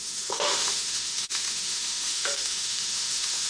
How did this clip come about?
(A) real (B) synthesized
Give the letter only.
B